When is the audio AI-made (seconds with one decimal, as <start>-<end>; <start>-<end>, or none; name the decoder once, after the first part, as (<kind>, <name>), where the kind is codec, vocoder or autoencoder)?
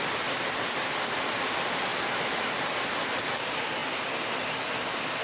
none